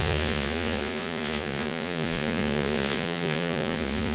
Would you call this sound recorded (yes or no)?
no